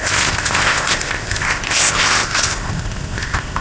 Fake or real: fake